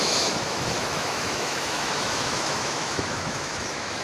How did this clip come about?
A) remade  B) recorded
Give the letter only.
A